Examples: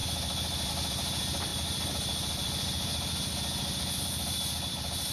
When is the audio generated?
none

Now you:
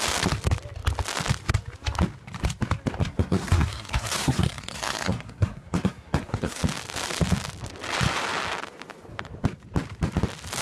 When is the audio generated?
3.0-6.6 (codec, SNAC)